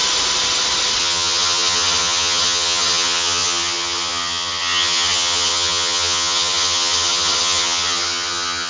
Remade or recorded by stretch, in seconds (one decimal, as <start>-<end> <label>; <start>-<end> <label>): 0.0-1.0 recorded; 1.0-8.7 remade

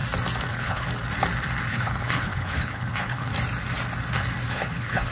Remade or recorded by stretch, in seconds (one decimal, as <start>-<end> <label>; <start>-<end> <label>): 0.0-0.5 recorded; 0.5-0.9 remade; 0.9-1.7 recorded; 1.7-3.3 remade; 3.3-4.5 recorded; 4.5-5.1 remade

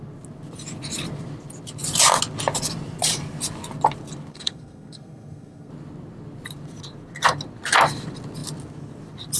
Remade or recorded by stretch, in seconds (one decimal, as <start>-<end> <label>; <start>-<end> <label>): 0.0-4.3 recorded; 4.3-5.7 remade; 5.7-9.4 recorded

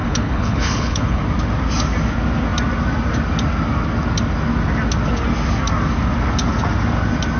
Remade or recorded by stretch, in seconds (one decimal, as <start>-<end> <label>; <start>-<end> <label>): 0.0-1.2 remade; 1.2-7.4 recorded